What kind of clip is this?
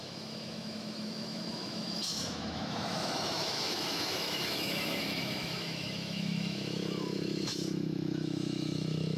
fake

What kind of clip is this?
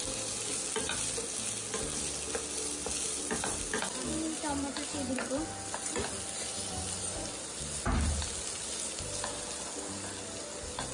real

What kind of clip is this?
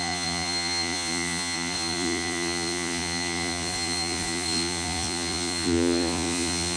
fake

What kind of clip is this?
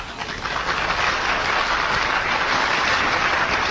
real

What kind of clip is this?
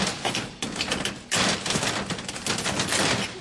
real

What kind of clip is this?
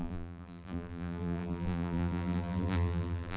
fake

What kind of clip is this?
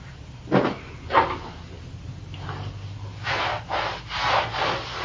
real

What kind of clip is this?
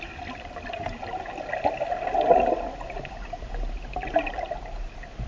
real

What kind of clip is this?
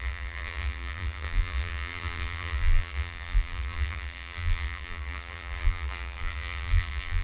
fake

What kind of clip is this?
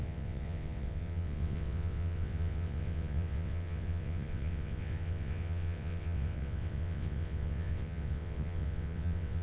fake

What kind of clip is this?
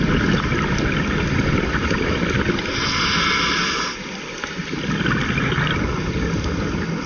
real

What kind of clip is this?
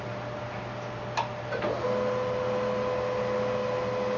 real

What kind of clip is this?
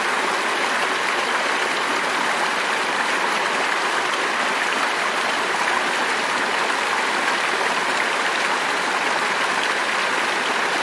real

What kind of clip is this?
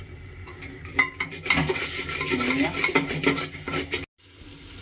real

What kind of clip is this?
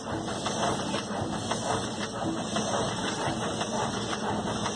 real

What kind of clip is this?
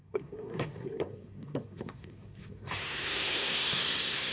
fake